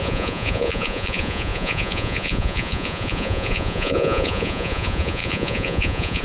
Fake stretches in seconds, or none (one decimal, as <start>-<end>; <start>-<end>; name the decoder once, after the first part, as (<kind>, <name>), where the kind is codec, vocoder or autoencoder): 0.0-6.2 (vocoder, Vocos)